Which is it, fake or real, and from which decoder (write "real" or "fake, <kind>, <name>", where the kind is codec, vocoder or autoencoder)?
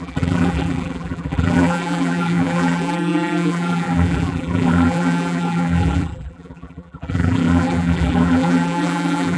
fake, vocoder, BigVGAN v2